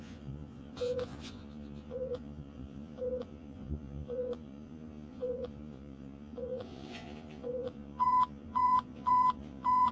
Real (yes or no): no